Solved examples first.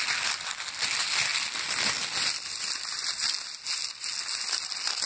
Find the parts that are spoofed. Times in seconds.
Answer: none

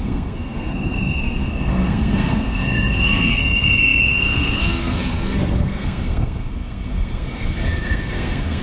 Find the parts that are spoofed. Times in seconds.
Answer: 0.0-8.6 (codec, SNAC)

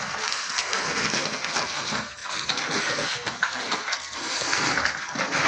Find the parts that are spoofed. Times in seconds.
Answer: 0.0-5.5 (codec, SNAC)

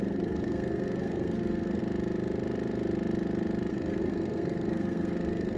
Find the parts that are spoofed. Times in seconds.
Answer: 0.0-1.8 (codec, SNAC); 3.7-5.6

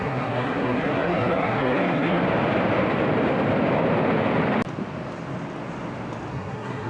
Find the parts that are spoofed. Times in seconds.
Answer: 0.0-2.2 (codec, SNAC); 6.3-6.9

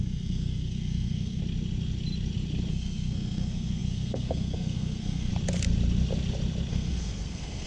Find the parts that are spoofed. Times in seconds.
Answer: 0.0-1.4 (codec, SNAC); 2.7-5.3; 6.7-7.7

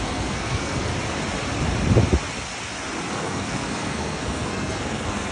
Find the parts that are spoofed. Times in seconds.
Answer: 0.0-0.9 (codec, SNAC); 3.1-5.3